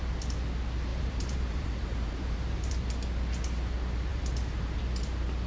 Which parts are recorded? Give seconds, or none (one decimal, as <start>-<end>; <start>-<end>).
0.0-0.9; 2.8-4.1; 4.8-5.5

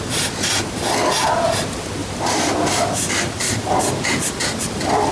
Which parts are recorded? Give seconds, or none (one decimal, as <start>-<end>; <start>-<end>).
0.0-2.0

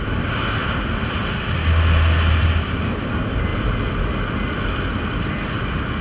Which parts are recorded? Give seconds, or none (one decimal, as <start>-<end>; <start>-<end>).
0.0-0.6; 3.1-6.0